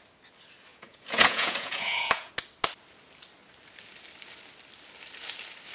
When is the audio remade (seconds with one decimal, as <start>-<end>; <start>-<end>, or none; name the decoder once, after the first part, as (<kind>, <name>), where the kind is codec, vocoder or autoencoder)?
0.7-2.3 (vocoder, Vocos)